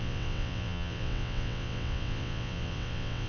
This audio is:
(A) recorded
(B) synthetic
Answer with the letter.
B